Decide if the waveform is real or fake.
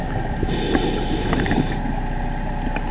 real